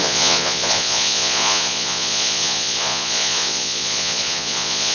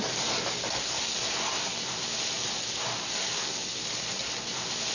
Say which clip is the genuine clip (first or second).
second